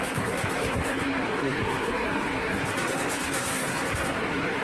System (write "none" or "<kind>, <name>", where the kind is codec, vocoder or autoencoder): codec, SNAC